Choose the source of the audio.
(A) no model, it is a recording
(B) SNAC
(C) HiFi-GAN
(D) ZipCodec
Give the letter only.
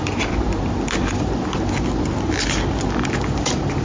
A